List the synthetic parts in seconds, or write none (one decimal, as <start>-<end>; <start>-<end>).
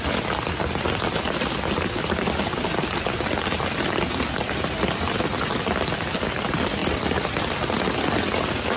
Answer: none